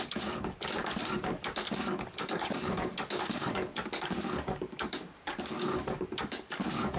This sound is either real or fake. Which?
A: fake